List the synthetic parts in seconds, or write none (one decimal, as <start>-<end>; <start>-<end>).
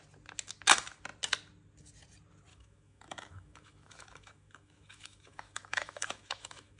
2.5-6.8